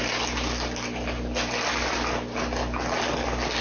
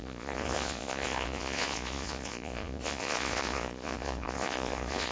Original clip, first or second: first